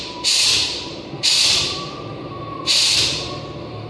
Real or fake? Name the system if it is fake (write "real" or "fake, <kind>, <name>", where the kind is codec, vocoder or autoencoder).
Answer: fake, vocoder, BigVGAN v2